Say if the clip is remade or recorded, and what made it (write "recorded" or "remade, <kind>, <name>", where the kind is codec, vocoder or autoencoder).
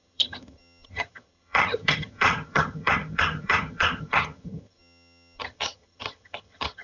remade, vocoder, HiFi-GAN